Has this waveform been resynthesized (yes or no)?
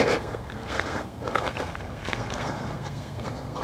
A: yes